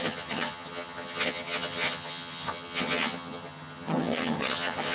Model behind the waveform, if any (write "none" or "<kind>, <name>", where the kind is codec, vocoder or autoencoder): vocoder, HiFi-GAN